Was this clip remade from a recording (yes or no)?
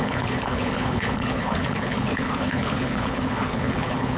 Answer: yes